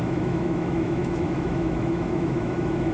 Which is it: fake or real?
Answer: fake